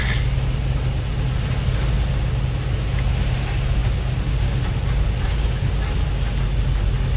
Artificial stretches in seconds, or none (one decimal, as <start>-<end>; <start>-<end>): none